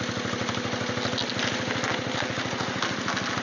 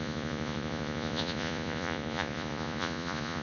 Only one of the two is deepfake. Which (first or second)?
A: second